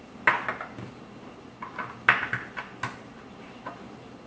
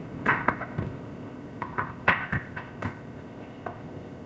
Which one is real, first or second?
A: first